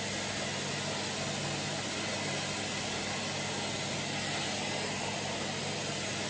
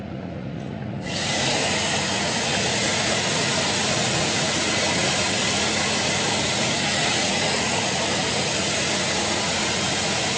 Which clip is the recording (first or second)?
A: first